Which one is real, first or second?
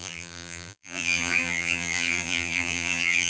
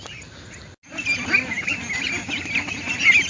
second